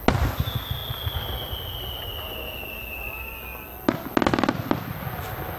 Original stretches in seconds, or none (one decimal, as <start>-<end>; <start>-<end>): 0.0-5.6